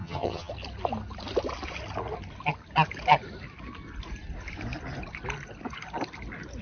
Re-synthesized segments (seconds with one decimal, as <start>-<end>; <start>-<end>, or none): 0.0-0.5